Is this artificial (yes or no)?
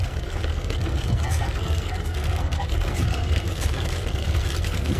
yes